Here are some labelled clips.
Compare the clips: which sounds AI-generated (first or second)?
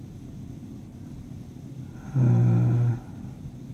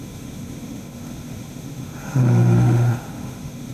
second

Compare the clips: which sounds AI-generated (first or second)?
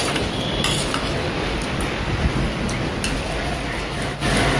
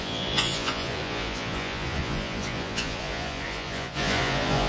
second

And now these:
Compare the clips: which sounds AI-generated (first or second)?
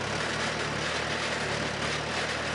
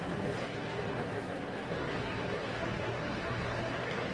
second